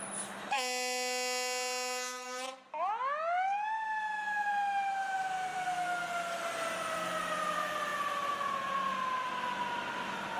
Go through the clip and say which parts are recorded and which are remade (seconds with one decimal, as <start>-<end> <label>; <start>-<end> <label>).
0.0-10.4 recorded